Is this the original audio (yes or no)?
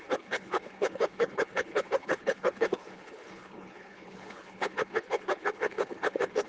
no